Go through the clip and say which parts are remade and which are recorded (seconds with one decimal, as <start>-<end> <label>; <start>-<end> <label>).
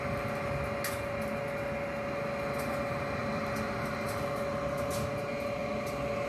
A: 0.0-3.2 recorded; 3.2-3.9 remade; 3.9-6.3 recorded